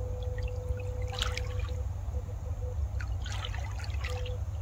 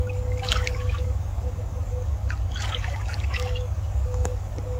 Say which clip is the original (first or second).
first